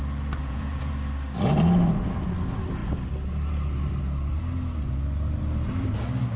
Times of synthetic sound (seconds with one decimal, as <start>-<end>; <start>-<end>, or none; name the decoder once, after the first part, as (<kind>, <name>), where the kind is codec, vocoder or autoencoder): 0.4-0.9 (vocoder, Vocos)

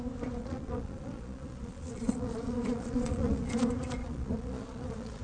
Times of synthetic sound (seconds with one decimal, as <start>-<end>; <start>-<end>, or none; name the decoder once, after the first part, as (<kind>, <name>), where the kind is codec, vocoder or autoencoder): 0.4-3.5 (vocoder, Vocos); 4.0-5.2

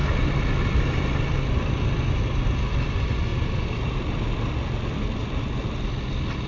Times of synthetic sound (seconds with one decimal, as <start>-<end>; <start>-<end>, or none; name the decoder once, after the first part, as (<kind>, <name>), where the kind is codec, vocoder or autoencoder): none

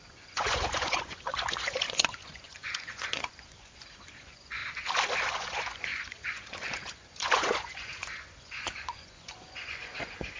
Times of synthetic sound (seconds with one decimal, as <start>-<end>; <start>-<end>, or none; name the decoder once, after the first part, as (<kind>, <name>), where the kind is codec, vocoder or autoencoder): 0.0-4.6 (vocoder, Vocos); 5.3-10.4

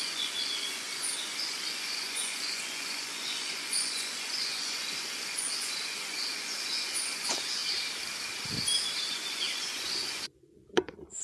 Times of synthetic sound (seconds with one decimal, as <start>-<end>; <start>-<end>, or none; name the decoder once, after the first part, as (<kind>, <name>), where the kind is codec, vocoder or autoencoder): 0.0-7.6 (vocoder, Vocos); 9.1-11.2

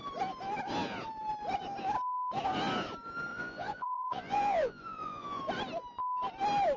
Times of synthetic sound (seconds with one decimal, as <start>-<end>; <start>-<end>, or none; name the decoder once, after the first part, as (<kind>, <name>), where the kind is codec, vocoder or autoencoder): 3.3-5.4 (vocoder, Vocos)

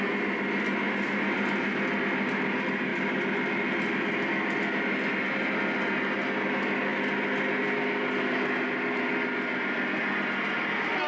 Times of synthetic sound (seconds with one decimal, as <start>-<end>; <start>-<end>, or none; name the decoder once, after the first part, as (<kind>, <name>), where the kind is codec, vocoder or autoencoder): none